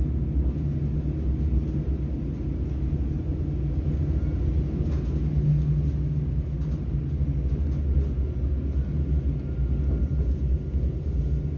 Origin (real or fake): real